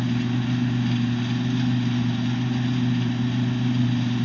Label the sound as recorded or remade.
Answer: recorded